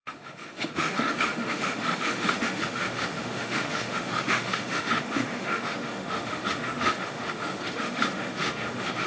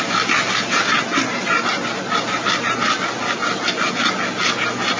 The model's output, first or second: first